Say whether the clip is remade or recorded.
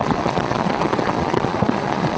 remade